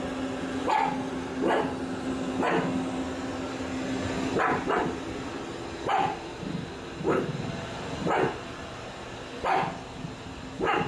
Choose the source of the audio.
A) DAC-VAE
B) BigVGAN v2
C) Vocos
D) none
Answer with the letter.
D